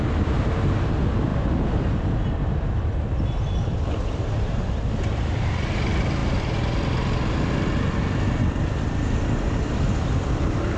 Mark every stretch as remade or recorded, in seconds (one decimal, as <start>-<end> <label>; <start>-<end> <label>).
0.0-10.8 recorded